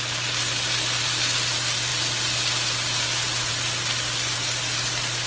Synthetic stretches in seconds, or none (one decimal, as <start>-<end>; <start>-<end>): none